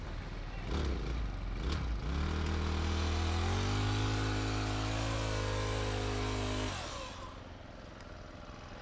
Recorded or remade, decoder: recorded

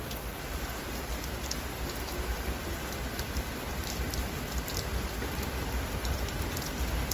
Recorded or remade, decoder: recorded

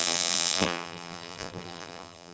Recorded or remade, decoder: remade, vocoder, BigVGAN v2